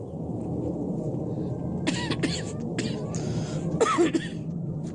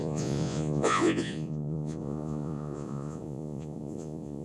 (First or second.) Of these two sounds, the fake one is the second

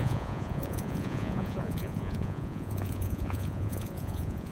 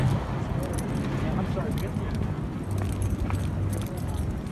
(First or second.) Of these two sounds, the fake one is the first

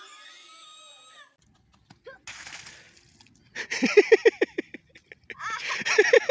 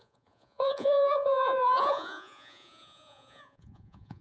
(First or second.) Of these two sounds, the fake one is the second